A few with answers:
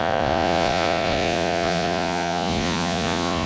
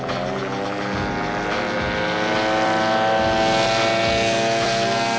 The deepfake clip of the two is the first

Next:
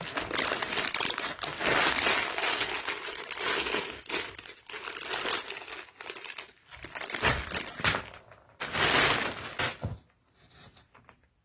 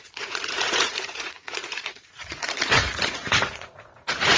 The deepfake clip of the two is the second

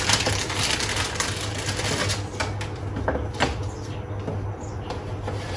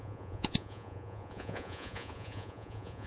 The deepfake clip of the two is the second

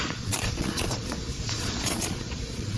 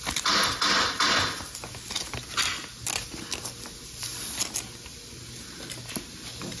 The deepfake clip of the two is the first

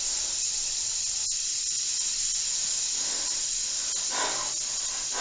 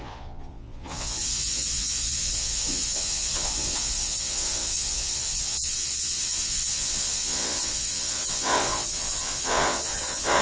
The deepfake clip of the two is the second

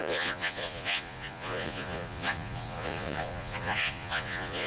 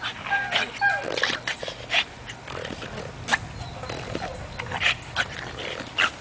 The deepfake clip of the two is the first